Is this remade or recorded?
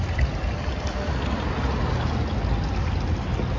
recorded